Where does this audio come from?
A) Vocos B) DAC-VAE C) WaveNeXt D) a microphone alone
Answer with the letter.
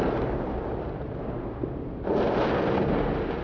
D